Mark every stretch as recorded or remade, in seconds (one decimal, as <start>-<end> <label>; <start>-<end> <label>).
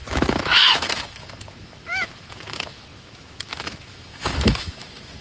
0.0-5.2 remade